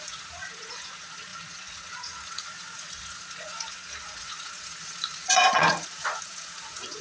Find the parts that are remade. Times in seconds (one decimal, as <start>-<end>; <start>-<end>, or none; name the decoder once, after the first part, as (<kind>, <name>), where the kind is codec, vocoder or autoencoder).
0.0-7.0 (vocoder, Vocos)